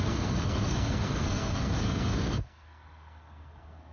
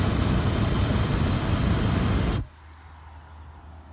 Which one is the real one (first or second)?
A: second